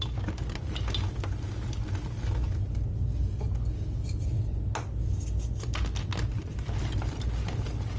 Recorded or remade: recorded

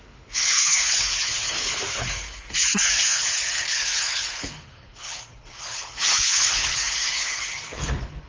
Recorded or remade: remade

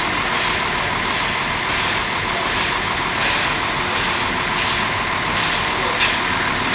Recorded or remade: recorded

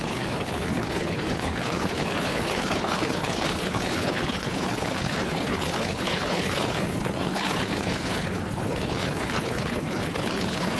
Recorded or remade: remade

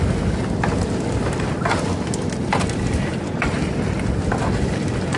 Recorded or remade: recorded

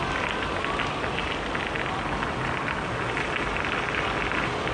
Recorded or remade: recorded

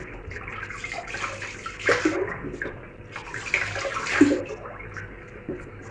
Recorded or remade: recorded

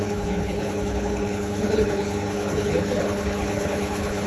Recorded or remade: remade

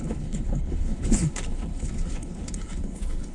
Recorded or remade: remade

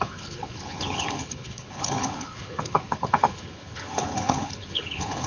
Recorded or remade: remade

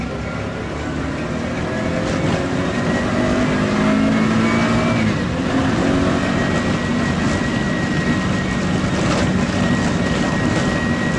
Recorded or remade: recorded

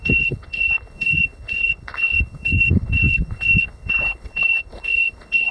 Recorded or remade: remade